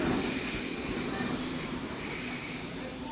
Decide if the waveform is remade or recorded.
recorded